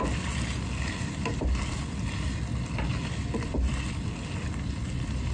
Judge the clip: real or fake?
real